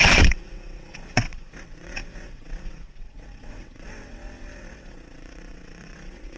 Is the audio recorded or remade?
remade